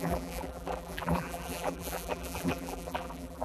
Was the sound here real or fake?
fake